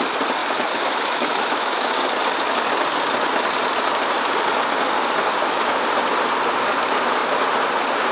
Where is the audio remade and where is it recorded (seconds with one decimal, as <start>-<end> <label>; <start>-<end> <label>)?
0.0-0.4 recorded; 0.4-1.9 remade; 1.9-8.1 recorded